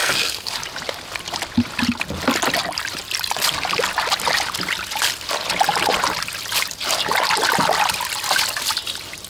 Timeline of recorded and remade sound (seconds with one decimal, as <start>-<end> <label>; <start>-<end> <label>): 0.0-0.5 remade; 0.5-9.3 recorded